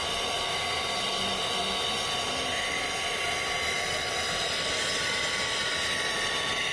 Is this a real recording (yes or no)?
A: yes